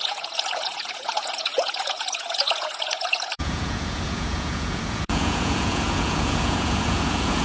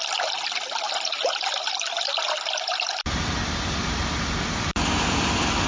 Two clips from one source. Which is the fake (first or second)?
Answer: first